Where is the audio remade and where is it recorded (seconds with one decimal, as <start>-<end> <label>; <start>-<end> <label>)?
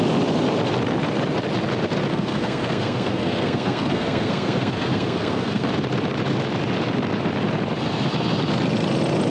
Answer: 0.0-2.1 recorded; 2.1-5.7 remade; 5.7-9.3 recorded